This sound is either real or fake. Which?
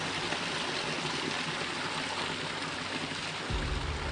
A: real